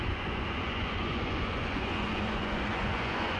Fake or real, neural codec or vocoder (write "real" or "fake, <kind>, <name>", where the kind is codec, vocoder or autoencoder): fake, vocoder, Vocos